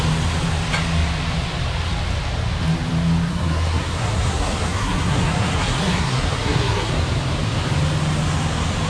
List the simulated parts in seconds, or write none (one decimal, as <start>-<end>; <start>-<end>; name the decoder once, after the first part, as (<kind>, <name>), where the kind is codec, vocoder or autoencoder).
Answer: 3.3-6.9 (codec, SNAC)